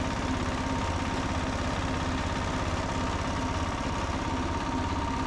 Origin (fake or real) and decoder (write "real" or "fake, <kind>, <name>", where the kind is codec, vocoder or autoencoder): real